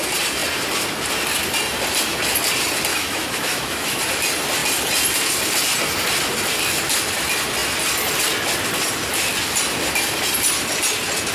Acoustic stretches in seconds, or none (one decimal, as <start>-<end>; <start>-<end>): 0.0-2.9; 4.0-11.3